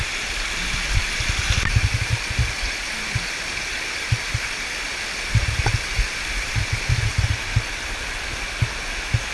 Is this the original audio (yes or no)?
yes